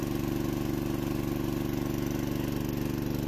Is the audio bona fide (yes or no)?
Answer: yes